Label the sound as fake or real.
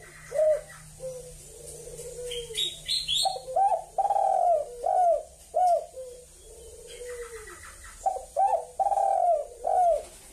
real